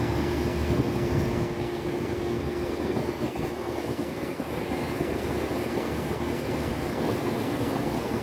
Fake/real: fake